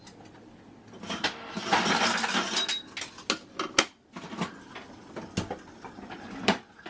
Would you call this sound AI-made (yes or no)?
no